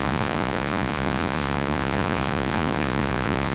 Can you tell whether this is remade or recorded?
remade